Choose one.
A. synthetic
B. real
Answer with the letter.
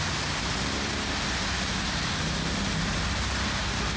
B